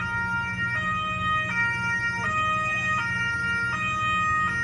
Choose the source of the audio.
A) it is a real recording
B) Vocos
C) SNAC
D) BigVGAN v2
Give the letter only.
A